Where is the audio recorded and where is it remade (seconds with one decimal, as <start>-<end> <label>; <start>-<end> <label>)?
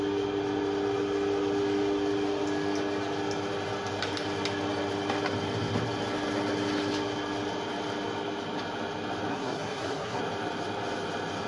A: 0.0-9.3 recorded; 9.3-10.2 remade; 10.2-11.5 recorded